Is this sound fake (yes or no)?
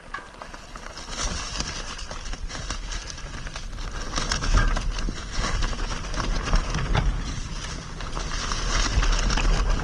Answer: no